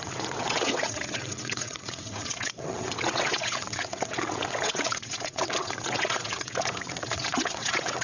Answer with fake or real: fake